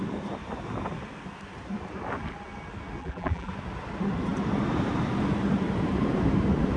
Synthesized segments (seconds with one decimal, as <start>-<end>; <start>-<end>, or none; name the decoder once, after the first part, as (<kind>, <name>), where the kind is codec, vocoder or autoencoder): 3.0-3.5 (vocoder, BigVGAN v2)